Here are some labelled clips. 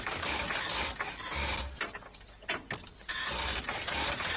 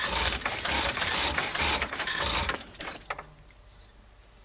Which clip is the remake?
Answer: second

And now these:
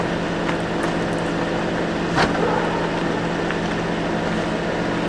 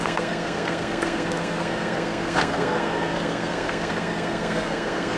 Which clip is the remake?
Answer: second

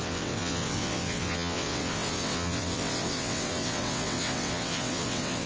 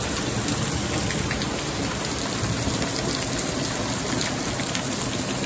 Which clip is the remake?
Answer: first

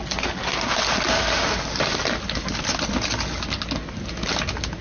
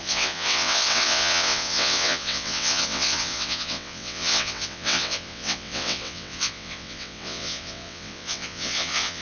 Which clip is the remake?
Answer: second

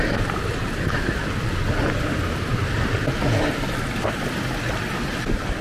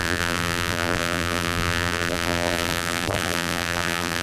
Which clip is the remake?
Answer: second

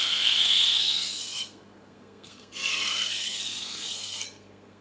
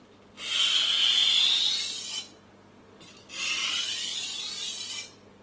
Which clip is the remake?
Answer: first